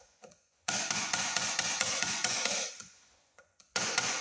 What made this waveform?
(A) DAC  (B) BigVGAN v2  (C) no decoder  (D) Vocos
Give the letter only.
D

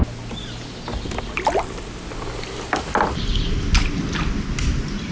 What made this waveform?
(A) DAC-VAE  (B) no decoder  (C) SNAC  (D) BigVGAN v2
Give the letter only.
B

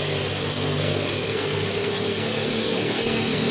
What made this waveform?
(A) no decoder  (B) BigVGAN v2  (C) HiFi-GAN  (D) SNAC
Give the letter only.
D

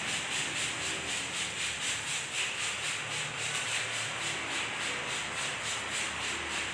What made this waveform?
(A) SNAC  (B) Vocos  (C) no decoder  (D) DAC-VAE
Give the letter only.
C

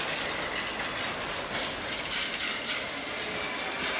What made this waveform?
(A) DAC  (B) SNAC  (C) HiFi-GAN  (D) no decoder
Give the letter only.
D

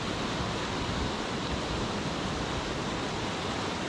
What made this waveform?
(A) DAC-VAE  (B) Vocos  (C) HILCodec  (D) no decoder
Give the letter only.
D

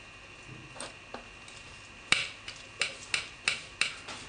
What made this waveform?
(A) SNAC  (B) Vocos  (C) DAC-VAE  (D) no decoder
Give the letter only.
D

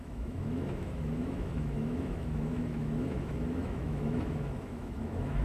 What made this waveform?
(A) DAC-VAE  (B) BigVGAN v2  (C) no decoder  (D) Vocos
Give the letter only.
A